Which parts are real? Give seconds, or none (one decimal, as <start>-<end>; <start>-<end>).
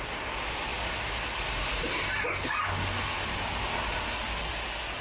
0.0-5.0